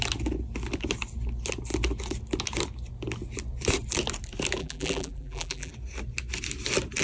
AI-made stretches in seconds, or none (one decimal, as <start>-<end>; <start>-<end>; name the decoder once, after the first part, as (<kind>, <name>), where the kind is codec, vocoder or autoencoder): 4.6-5.7 (vocoder, BigVGAN v2)

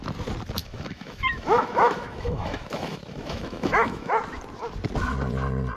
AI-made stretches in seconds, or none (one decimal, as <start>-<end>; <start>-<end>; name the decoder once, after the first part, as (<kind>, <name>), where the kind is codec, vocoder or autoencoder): 0.6-4.1 (autoencoder, DAC-VAE)